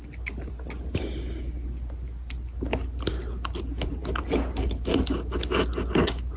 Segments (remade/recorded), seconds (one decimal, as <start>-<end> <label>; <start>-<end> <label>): 0.0-6.4 recorded